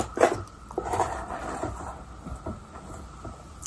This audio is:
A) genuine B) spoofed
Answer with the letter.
B